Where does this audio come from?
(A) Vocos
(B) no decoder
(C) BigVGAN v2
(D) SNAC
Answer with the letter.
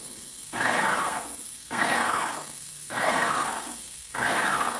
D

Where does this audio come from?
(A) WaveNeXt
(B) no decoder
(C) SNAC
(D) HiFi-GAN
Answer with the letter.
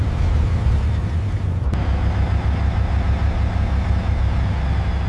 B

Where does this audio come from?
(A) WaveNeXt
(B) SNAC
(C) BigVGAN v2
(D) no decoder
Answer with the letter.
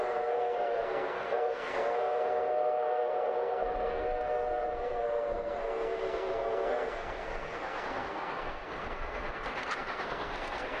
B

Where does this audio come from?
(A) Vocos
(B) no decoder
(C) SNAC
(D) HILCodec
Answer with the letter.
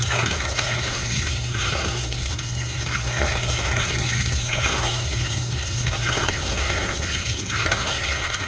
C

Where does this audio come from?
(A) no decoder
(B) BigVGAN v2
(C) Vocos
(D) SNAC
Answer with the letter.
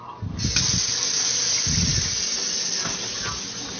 A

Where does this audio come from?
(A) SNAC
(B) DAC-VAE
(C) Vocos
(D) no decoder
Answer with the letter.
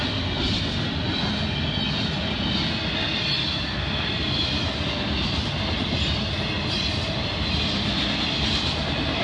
D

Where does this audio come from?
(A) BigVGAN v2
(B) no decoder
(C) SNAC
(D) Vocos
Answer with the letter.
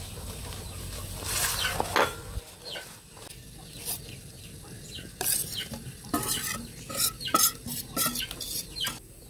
B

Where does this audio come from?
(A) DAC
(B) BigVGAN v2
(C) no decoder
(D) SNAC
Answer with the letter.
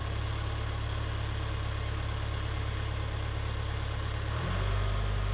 C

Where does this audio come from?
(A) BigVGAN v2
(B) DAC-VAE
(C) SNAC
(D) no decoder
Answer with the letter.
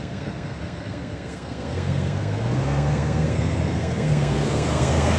C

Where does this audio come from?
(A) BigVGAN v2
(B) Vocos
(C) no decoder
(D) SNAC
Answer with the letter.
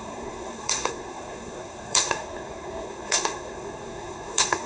D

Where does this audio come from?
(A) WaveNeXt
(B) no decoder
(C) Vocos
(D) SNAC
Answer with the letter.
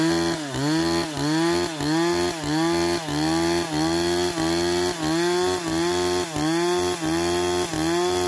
B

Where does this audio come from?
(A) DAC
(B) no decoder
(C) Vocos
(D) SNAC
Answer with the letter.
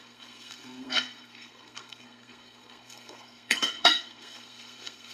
D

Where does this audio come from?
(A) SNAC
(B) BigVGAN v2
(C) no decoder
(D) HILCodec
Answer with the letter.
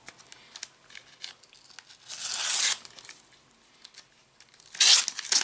C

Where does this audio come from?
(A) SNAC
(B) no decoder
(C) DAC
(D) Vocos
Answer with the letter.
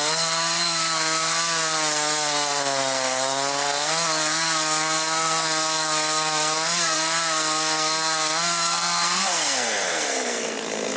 A